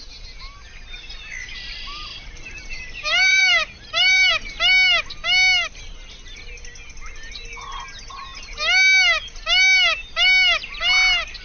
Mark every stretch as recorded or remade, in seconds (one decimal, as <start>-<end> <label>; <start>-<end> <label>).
0.0-2.1 recorded; 2.1-4.3 remade; 4.3-11.4 recorded